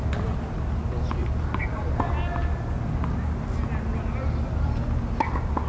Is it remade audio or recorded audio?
recorded